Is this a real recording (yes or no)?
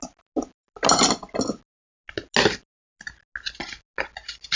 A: yes